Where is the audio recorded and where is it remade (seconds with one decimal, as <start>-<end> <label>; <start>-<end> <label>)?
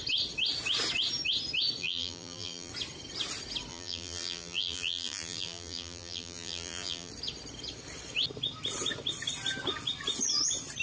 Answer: 0.0-1.8 recorded; 1.8-2.7 remade; 2.7-3.7 recorded; 3.7-7.1 remade; 7.1-10.8 recorded